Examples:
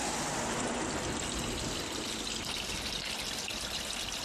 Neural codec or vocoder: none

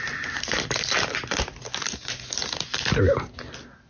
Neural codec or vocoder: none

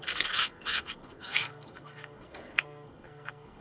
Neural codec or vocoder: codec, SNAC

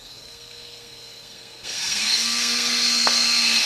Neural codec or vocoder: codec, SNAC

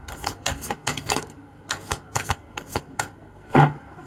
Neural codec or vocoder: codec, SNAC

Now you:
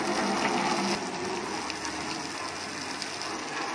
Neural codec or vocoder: none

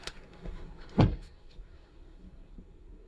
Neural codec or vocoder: codec, SNAC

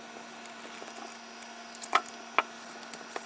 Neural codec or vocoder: none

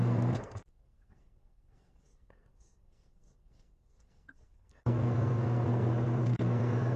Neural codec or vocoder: codec, SNAC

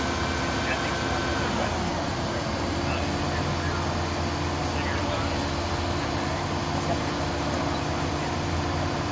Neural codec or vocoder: none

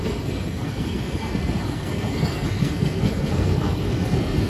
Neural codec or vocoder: codec, SNAC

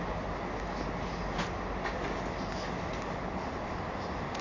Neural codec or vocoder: none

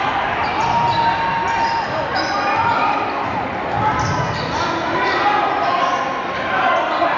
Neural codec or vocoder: none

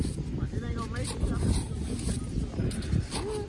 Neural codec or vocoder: none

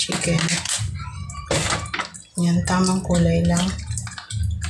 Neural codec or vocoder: none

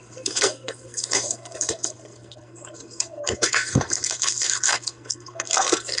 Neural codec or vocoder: codec, SNAC